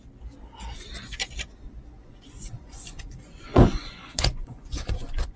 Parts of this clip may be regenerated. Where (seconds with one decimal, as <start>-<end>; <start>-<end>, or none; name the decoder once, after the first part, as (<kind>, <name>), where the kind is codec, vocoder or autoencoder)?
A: 2.0-5.4 (vocoder, Vocos)